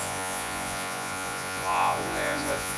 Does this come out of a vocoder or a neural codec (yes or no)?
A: yes